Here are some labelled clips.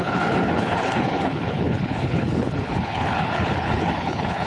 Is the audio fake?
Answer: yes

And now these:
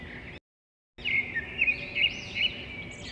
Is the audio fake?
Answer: no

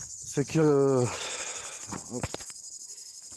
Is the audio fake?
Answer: no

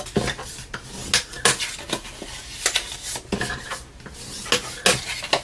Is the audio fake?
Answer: no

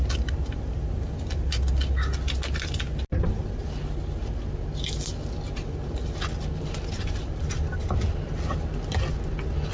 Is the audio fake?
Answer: no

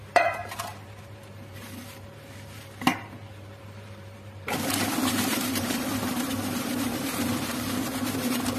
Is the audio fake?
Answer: yes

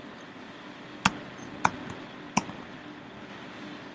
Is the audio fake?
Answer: no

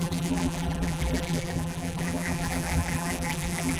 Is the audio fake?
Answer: yes